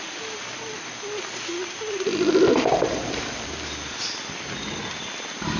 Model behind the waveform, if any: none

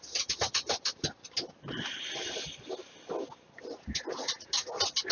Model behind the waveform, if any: none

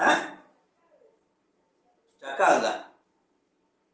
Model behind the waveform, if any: none